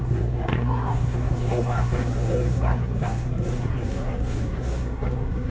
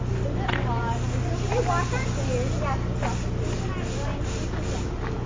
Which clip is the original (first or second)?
second